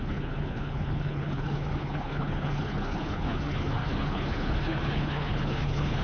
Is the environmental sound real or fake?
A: fake